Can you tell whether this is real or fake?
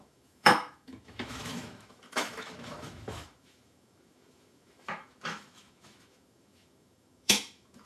fake